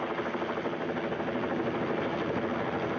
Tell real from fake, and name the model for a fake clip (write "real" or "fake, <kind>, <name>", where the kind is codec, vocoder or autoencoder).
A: real